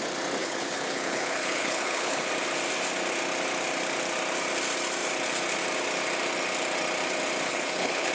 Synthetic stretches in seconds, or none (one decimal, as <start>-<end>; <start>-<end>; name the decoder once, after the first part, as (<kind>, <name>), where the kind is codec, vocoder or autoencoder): 0.4-2.3 (codec, HILCodec); 7.5-8.1